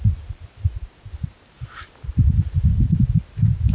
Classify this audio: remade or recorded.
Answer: recorded